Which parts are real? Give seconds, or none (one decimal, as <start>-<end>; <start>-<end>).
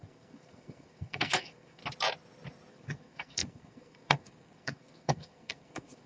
1.8-2.7